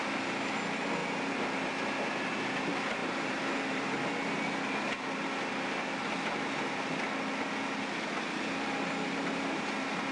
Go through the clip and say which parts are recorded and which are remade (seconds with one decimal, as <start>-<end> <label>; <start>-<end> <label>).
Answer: 0.0-3.0 recorded; 3.0-4.1 remade; 4.1-10.1 recorded

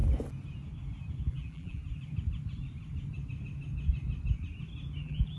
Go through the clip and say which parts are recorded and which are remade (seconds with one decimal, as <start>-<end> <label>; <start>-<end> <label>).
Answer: 0.0-1.3 recorded; 1.3-1.8 remade; 1.8-5.0 recorded; 5.0-5.4 remade

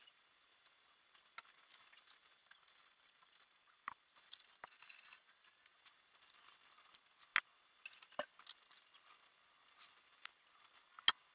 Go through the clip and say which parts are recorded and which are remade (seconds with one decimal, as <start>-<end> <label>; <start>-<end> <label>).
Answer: 0.0-2.4 recorded; 2.4-5.8 remade; 5.8-11.3 recorded

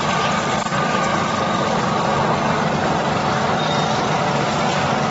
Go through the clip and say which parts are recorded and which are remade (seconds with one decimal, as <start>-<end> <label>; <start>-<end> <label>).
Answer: 0.0-5.1 recorded

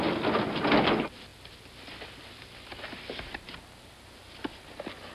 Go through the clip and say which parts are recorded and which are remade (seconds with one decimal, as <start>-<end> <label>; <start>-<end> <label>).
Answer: 0.0-5.1 recorded

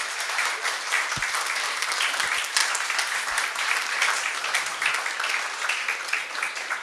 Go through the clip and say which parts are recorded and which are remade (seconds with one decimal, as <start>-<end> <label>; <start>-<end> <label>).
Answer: 0.0-0.5 remade; 0.5-2.6 recorded; 2.6-5.0 remade; 5.0-6.8 recorded

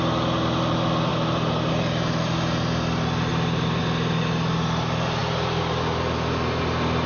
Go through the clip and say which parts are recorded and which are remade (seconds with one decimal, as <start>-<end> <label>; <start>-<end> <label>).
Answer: 0.0-1.1 recorded; 1.1-1.7 remade; 1.7-3.3 recorded; 3.3-3.8 remade; 3.8-7.1 recorded